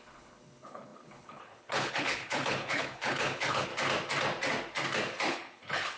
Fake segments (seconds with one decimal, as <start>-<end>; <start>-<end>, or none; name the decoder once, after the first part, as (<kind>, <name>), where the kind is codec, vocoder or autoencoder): 0.0-3.7 (codec, HILCodec); 5.3-6.0